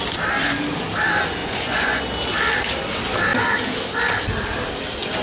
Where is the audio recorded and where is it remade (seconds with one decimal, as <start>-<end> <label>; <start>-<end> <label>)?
0.0-1.4 recorded; 1.4-2.0 remade; 2.0-5.2 recorded